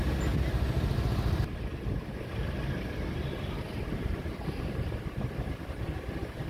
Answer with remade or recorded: recorded